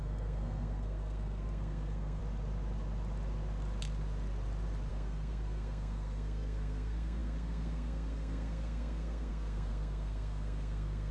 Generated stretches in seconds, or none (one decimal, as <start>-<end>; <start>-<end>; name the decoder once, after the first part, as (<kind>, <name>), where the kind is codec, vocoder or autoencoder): 0.0-2.2 (codec, SNAC); 4.9-11.1